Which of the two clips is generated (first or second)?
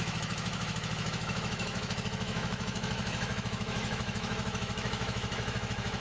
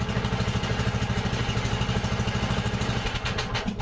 first